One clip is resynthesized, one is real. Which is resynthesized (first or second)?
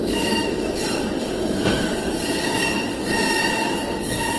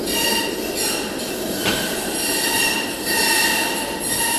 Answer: first